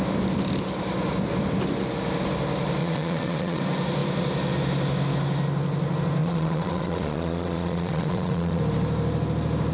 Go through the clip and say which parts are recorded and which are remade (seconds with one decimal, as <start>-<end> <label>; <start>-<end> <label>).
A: 0.0-2.8 recorded; 2.8-3.6 remade; 3.6-6.2 recorded; 6.2-8.6 remade; 8.6-9.7 recorded